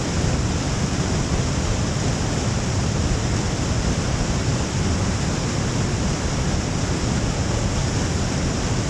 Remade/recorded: recorded